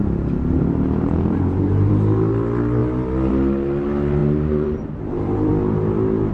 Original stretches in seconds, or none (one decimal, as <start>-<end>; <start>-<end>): 1.9-4.2; 5.5-6.3